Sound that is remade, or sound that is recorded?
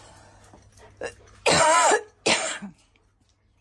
recorded